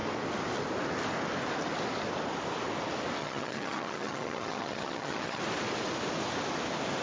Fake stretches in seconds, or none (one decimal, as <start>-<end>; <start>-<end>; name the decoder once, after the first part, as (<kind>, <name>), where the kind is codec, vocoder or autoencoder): 3.2-5.4 (vocoder, HiFi-GAN)